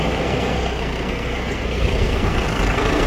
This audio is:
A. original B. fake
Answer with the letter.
B